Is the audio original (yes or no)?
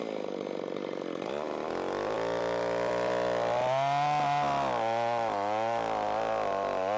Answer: yes